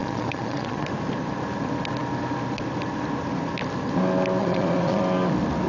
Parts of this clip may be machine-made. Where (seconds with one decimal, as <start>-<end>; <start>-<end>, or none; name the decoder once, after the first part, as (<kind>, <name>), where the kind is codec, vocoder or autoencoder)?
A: 0.0-0.9 (vocoder, Vocos); 4.4-5.0